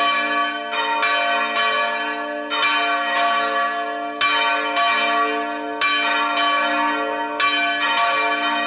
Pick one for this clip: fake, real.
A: real